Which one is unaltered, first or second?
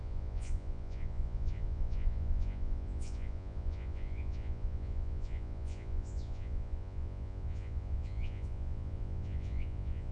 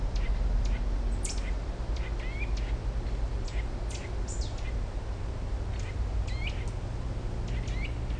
second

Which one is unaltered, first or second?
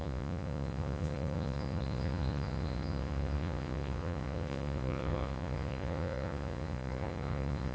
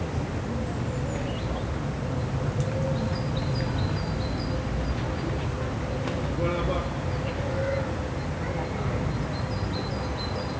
second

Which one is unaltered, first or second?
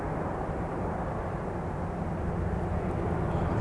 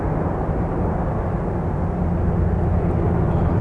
second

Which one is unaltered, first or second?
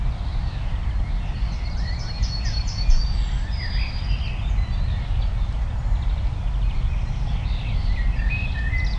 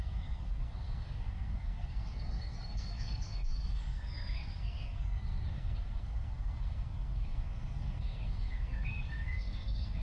first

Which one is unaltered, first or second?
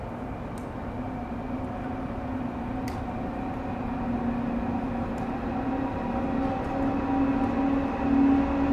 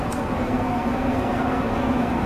first